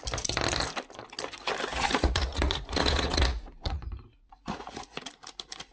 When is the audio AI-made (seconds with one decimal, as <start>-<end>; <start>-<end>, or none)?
1.7-5.1